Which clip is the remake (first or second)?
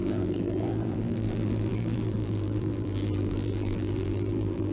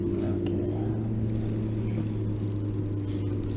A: first